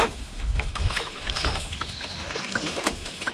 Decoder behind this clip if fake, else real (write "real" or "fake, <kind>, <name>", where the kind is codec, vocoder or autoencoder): fake, autoencoder, DAC-VAE